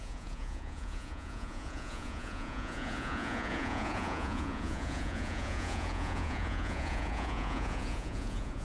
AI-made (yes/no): yes